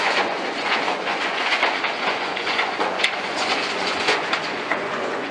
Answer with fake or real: fake